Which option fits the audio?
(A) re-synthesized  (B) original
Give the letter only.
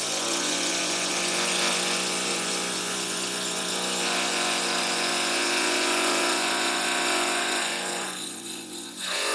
A